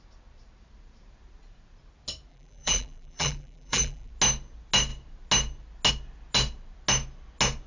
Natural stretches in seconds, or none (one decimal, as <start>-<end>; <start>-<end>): 0.0-2.3; 4.1-7.7